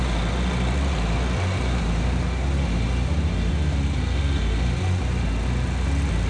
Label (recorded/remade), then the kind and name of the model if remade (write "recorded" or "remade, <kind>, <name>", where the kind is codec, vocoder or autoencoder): recorded